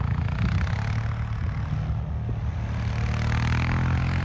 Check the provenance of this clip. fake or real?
real